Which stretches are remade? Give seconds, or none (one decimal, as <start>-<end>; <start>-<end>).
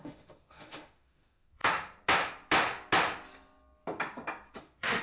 0.0-1.6; 4.6-5.0